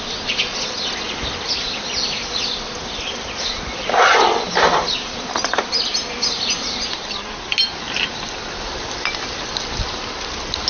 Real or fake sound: real